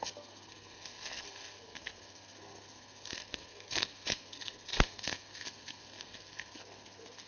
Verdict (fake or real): fake